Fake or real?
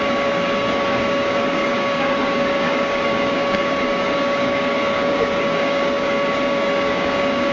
fake